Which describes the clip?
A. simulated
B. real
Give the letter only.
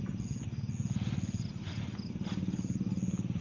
B